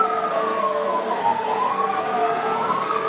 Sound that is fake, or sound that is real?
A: fake